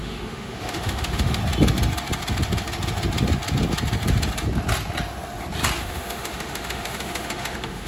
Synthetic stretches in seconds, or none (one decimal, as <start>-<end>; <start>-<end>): 0.0-1.4; 5.8-7.9